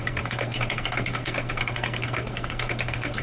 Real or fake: fake